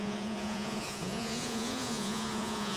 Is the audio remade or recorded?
remade